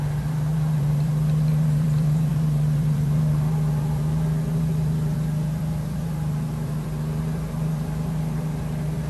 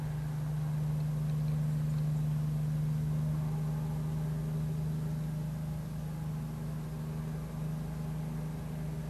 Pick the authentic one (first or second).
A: second